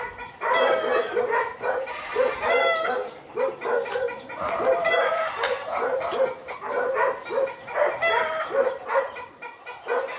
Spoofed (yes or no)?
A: no